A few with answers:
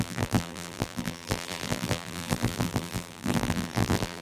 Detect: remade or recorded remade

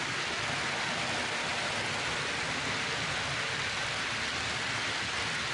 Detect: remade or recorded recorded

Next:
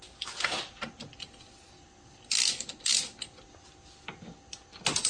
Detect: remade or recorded recorded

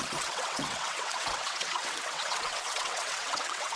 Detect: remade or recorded remade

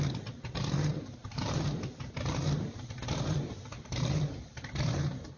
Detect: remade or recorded remade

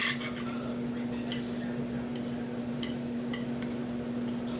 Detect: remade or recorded recorded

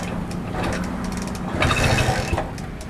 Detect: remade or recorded recorded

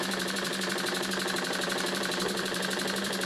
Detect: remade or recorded remade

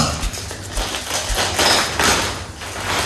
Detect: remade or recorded recorded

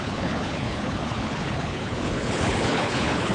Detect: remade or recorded remade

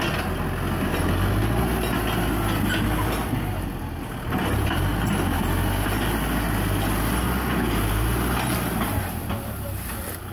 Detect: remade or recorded recorded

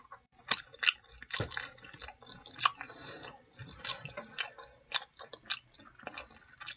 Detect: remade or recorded recorded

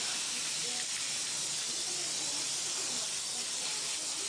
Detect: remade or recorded recorded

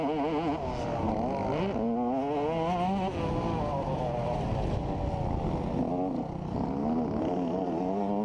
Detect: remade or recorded recorded